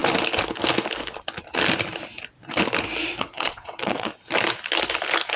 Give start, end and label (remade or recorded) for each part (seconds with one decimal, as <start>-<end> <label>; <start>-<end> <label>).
0.0-3.2 recorded; 3.2-4.1 remade; 4.1-5.4 recorded